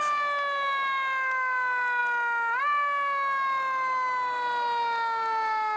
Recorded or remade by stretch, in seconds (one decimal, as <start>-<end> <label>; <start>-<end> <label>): 0.0-5.8 recorded